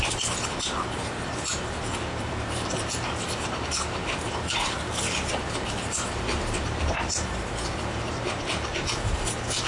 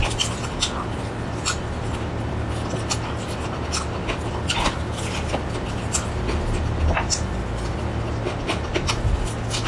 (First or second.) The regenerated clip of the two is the first